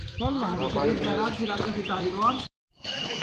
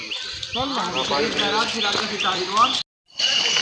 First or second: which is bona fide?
second